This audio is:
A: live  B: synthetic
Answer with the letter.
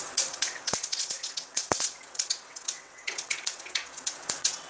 B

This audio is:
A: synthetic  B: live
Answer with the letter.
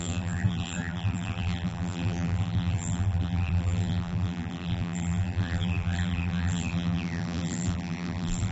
A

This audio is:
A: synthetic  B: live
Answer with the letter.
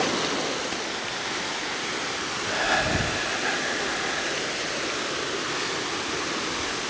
B